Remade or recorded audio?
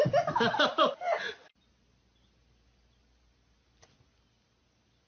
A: recorded